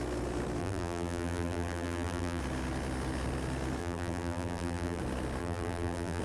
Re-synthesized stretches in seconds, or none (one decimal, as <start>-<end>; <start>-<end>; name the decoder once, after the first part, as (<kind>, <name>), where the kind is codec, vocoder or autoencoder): 0.6-2.4 (vocoder, BigVGAN v2); 3.8-5.0; 5.4-6.2

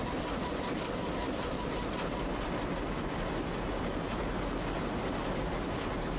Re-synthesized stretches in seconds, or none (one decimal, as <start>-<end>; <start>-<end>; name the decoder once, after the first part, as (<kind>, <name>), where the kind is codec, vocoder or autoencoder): 1.2-2.2 (vocoder, BigVGAN v2)

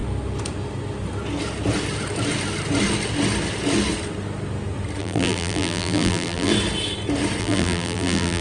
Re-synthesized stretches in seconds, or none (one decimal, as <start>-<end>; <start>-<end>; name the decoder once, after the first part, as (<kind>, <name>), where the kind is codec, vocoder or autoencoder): 5.0-6.5 (vocoder, BigVGAN v2); 7.4-8.4